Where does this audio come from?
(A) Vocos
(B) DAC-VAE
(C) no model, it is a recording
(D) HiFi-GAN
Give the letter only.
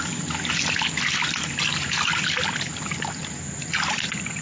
C